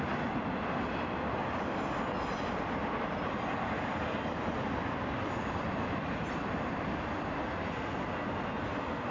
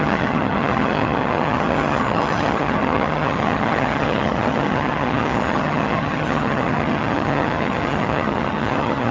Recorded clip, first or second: first